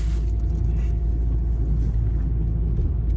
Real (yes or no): yes